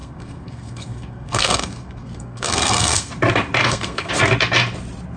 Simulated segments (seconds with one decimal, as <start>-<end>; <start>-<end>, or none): 0.0-3.1; 3.6-4.1